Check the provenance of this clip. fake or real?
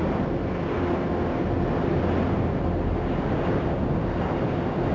real